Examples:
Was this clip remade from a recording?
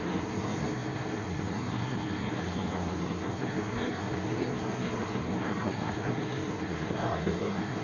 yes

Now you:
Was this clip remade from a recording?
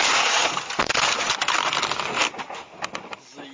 no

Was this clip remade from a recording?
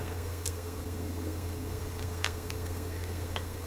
yes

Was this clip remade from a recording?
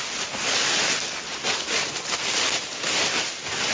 no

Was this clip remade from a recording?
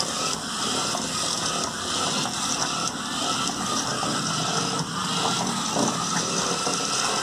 no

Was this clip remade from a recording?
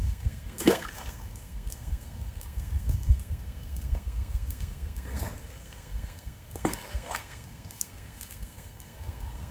yes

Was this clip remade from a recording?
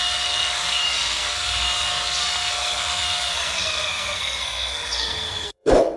yes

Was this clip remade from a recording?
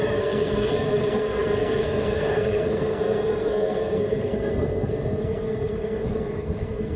yes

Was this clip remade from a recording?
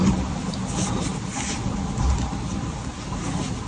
no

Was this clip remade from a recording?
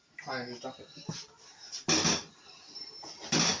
no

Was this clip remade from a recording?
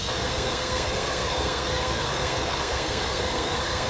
yes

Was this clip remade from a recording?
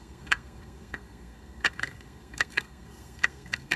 yes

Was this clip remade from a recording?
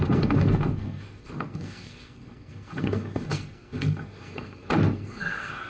yes